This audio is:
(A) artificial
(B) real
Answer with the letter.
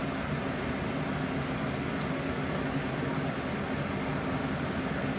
B